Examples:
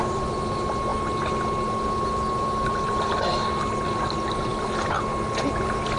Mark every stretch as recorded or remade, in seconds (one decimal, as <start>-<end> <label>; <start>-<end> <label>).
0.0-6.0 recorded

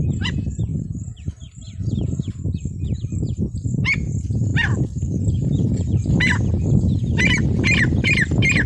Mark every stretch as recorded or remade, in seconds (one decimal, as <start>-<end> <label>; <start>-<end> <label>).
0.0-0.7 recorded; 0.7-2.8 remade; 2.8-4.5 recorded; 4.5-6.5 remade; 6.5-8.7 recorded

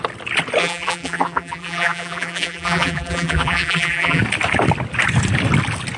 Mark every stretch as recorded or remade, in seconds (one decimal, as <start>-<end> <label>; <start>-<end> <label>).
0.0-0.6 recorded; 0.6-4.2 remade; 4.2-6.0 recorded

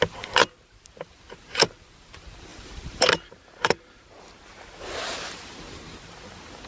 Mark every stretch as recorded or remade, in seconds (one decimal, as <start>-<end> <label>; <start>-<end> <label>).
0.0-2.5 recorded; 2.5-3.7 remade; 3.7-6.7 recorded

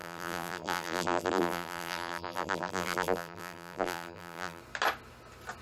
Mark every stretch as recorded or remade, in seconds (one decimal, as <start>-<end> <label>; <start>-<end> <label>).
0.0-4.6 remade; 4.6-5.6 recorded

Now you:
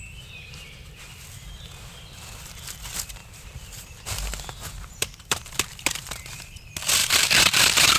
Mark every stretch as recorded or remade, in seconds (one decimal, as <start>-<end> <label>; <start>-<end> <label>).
0.0-3.2 recorded; 3.2-6.6 remade; 6.6-7.0 recorded; 7.0-8.0 remade

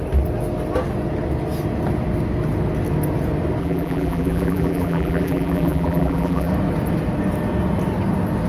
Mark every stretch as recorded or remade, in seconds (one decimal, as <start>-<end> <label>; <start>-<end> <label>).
0.0-3.6 recorded; 3.6-6.5 remade; 6.5-8.5 recorded